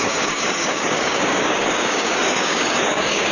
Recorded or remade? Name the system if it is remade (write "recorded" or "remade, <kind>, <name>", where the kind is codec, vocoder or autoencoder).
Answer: remade, codec, DAC